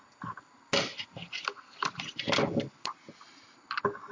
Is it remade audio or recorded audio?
recorded